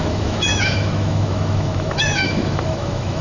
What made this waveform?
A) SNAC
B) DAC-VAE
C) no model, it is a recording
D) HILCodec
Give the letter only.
B